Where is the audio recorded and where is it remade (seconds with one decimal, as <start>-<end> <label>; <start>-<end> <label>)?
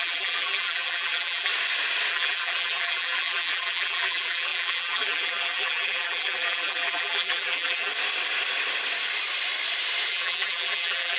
0.0-1.5 remade; 1.5-2.1 recorded; 2.1-7.9 remade; 7.9-10.1 recorded; 10.1-11.2 remade